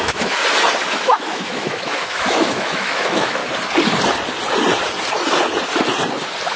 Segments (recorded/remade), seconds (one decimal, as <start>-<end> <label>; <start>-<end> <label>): 0.0-0.4 remade; 0.4-0.9 recorded; 0.9-3.4 remade; 3.4-6.6 recorded